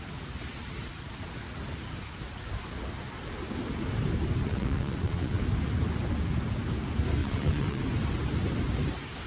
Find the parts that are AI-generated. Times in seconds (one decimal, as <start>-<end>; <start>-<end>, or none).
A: 4.4-5.4; 7.2-7.8